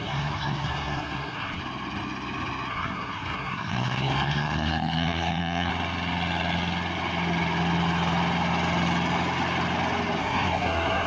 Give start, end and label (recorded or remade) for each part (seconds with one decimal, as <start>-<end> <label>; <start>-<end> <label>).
0.0-1.6 remade; 1.6-2.7 recorded; 2.7-5.7 remade; 5.7-10.2 recorded; 10.2-11.1 remade

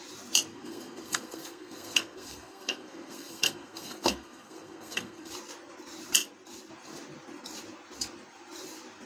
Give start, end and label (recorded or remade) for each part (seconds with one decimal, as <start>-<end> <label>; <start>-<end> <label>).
0.0-0.5 recorded; 0.5-5.3 remade; 5.3-9.1 recorded